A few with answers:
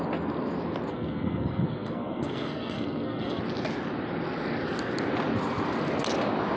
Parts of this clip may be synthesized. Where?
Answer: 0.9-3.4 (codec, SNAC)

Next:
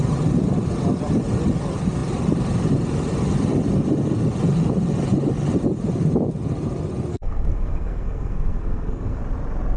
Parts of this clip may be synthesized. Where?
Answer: 7.1-9.2 (codec, SNAC)

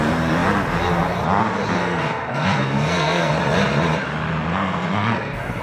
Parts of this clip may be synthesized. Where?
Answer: 1.8-3.3 (codec, SNAC); 4.5-5.6